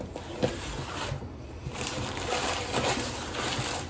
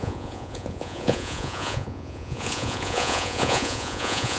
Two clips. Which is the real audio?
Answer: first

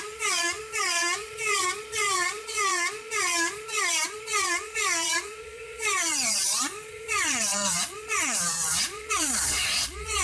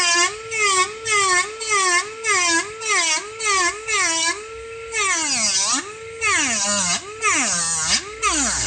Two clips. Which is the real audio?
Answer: second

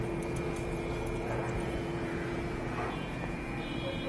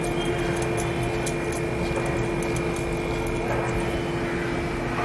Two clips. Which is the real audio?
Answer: second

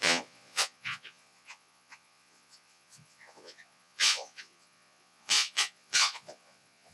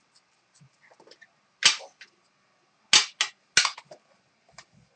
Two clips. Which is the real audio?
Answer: second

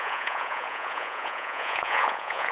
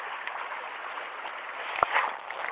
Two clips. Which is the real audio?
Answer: second